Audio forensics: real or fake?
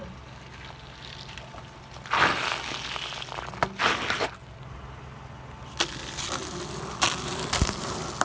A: real